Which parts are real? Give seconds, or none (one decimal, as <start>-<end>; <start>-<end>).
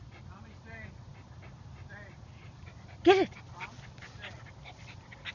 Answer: 0.0-5.3